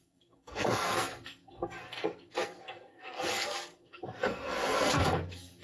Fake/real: fake